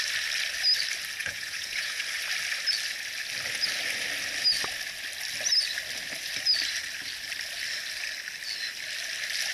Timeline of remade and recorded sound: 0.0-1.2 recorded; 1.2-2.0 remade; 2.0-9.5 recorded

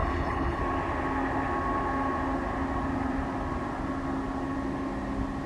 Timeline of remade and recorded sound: 0.0-0.6 remade; 0.6-5.5 recorded

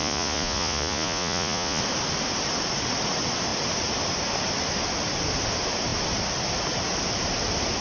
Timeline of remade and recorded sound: 0.0-1.8 remade; 1.8-7.8 recorded

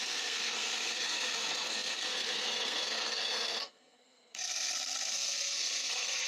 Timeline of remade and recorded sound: 0.0-6.3 remade

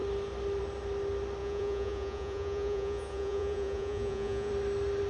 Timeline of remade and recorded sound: 0.0-1.4 recorded; 1.4-4.5 remade; 4.5-5.1 recorded

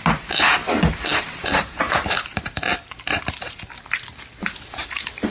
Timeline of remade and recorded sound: 0.0-0.6 recorded; 0.6-3.8 remade; 3.8-4.4 recorded; 4.4-5.3 remade